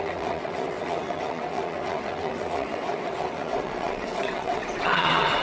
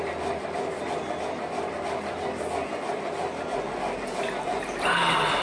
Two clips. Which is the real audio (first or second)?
second